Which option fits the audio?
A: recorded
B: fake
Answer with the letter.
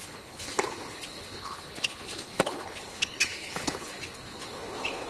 B